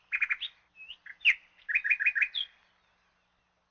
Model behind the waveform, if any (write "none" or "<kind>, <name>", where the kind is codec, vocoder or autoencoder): none